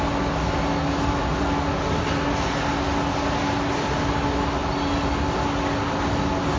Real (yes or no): yes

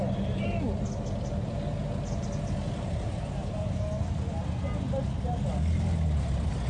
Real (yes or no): yes